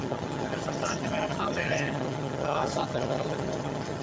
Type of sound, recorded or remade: remade